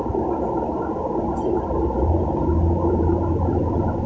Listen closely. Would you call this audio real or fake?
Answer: real